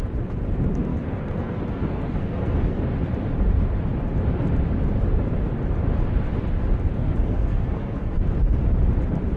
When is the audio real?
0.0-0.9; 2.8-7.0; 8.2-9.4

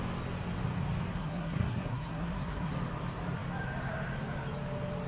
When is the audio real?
0.0-1.1; 2.7-5.1